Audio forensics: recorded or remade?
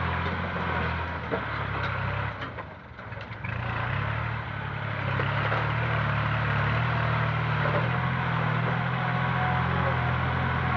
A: recorded